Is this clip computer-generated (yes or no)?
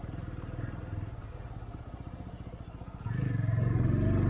no